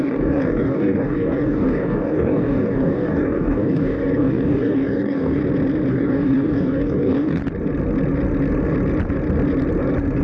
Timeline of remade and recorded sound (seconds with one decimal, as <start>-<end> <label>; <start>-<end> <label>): 0.0-5.4 remade; 5.4-5.9 recorded; 5.9-7.4 remade; 7.4-10.2 recorded